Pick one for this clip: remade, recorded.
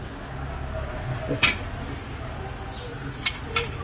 recorded